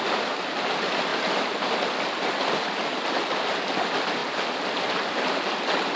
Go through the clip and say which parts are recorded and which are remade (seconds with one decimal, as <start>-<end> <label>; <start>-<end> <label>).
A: 0.0-6.0 recorded